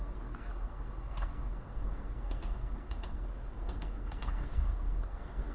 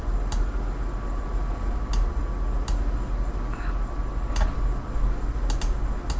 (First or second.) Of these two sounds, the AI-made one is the first